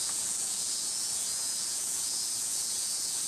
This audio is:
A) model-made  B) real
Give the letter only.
A